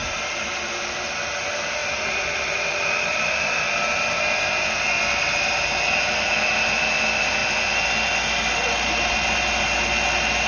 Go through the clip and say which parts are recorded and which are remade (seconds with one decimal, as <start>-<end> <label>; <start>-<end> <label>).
0.0-0.7 remade; 0.7-1.8 recorded; 1.8-4.2 remade; 4.2-10.5 recorded